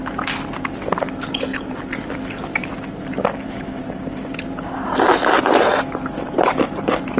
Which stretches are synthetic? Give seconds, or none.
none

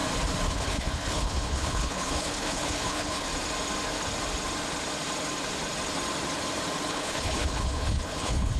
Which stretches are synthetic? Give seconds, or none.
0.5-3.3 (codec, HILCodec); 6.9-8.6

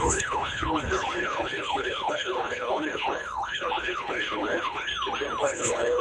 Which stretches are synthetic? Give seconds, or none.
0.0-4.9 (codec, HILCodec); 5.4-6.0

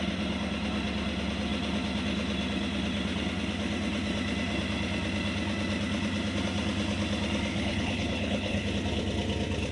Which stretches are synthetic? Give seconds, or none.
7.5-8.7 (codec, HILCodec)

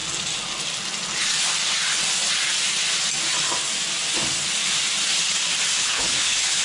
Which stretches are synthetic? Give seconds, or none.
5.8-6.6 (codec, HILCodec)

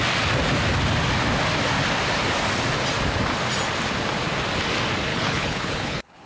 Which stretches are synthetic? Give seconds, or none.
5.1-6.3 (codec, HILCodec)